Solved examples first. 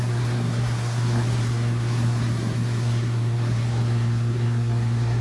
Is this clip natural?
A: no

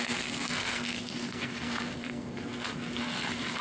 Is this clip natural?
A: no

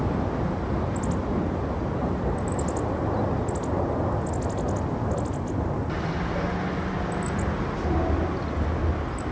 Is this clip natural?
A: yes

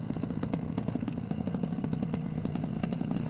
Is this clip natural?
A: no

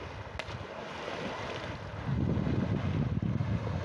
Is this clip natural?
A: yes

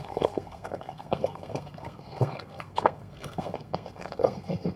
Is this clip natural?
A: no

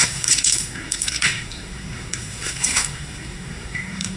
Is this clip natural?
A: no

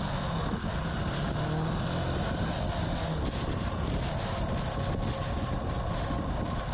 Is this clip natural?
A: yes